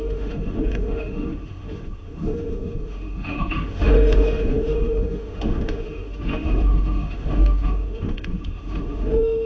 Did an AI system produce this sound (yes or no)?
yes